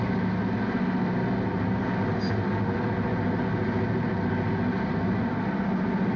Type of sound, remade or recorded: recorded